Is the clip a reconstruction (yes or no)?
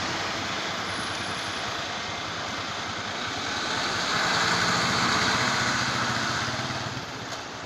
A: no